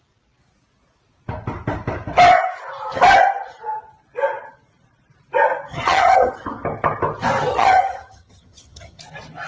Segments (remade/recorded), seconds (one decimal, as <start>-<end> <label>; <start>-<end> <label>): 0.0-5.7 recorded; 5.7-6.3 remade; 6.3-7.5 recorded; 7.5-9.0 remade; 9.0-9.5 recorded